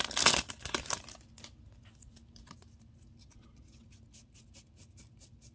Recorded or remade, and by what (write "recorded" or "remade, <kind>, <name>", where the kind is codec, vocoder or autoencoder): recorded